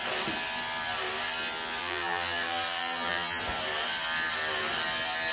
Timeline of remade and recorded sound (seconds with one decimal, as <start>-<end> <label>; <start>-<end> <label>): 0.0-1.8 recorded; 1.8-3.4 remade; 3.4-5.3 recorded